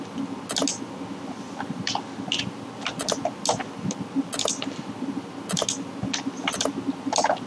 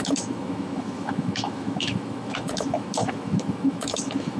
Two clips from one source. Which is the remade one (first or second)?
second